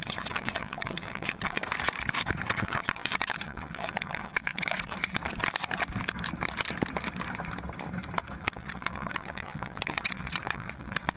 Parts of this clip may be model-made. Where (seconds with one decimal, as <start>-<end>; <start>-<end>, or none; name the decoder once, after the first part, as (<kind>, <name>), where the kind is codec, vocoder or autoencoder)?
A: 0.0-1.6 (vocoder, WaveNeXt); 2.5-5.2; 8.4-11.2